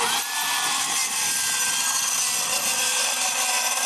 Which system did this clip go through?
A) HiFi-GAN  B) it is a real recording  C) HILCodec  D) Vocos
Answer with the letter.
B